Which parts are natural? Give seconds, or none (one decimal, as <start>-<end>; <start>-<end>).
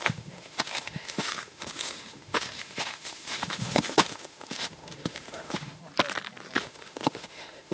5.8-6.6